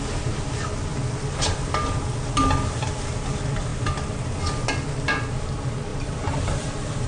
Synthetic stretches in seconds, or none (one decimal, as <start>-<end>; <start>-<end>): 5.9-7.1